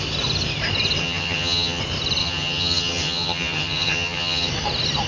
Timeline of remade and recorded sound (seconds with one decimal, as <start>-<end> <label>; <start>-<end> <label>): 0.0-1.0 recorded; 1.0-1.8 remade; 1.8-2.2 recorded; 2.2-4.5 remade; 4.5-5.1 recorded